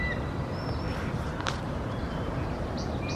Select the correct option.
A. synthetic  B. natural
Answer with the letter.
B